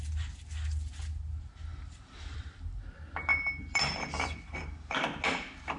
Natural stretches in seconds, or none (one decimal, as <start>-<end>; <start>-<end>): 0.0-1.7; 2.8-3.3; 4.6-5.8